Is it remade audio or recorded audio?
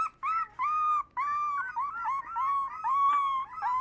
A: recorded